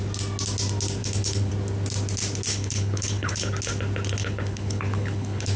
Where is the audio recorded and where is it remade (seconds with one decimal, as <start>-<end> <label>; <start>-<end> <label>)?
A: 0.0-1.0 recorded; 1.0-1.5 remade; 1.5-2.5 recorded; 2.5-3.5 remade; 3.5-4.2 recorded; 4.2-5.6 remade